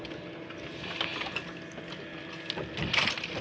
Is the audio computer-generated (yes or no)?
no